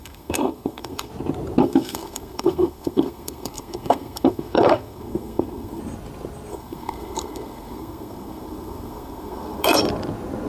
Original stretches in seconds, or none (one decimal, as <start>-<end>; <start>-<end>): 1.1-1.6; 5.8-6.5; 9.8-10.5